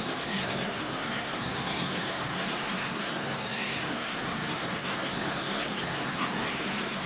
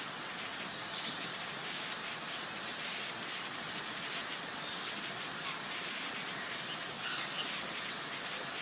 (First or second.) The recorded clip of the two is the second